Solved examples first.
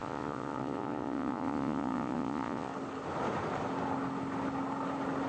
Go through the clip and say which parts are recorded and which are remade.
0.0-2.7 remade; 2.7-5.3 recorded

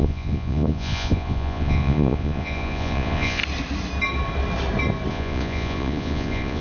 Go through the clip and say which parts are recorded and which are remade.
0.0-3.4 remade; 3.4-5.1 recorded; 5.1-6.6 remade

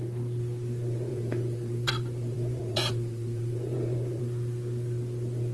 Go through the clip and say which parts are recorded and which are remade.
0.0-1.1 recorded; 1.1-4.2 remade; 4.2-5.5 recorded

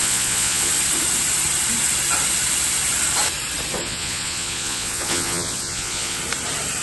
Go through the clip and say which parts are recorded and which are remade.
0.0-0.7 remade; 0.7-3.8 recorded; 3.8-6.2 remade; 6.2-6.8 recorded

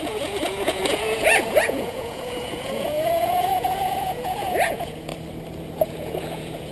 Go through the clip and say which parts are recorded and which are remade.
0.0-5.1 remade; 5.1-5.7 recorded; 5.7-6.7 remade

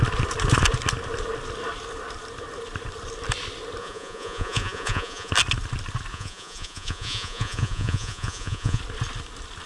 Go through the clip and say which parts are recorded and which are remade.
0.0-3.8 recorded; 3.8-5.3 remade; 5.3-6.1 recorded; 6.1-8.8 remade; 8.8-9.7 recorded